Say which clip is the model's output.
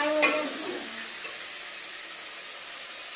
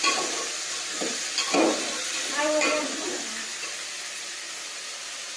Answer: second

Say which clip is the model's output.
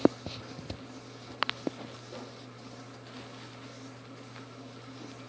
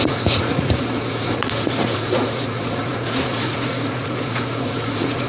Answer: second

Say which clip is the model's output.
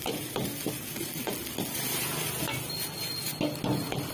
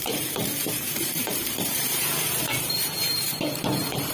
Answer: second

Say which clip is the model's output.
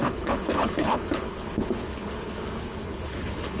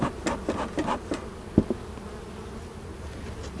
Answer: first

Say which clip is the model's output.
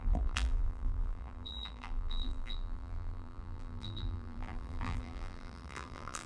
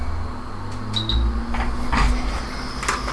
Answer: first